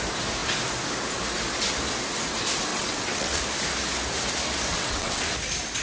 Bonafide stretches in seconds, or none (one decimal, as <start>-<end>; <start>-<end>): 0.0-2.7; 3.4-4.7; 5.2-5.8